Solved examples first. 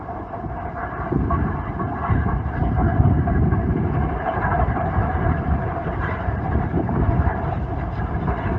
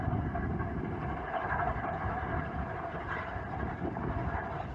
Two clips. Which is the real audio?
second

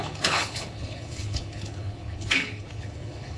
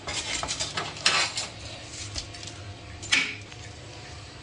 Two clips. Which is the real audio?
second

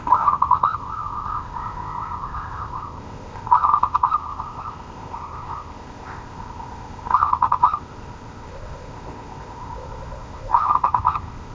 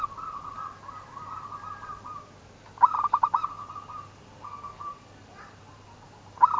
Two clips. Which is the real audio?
second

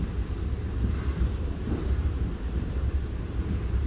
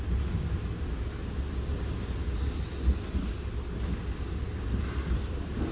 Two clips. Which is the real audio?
second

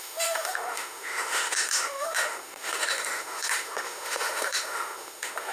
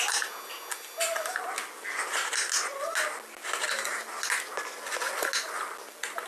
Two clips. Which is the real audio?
second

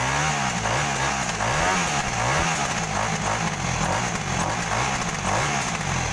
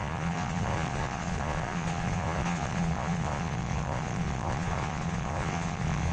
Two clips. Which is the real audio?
first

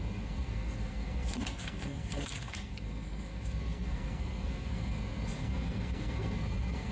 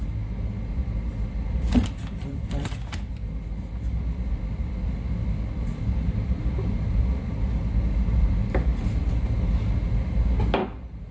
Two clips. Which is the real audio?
second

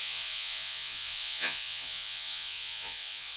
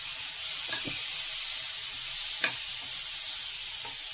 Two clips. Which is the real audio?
second